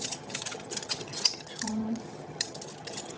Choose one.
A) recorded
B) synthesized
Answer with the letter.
B